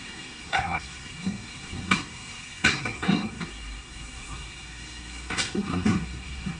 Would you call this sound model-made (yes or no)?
yes